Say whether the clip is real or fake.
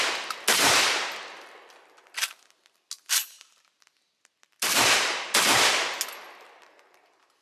real